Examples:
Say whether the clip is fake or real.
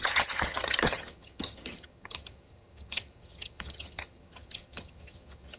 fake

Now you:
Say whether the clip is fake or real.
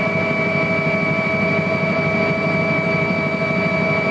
real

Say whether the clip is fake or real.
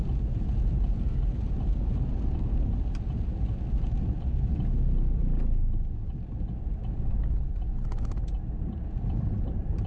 real